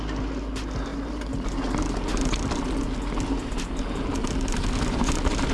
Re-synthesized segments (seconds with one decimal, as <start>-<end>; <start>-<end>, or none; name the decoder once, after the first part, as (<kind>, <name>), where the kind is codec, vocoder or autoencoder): none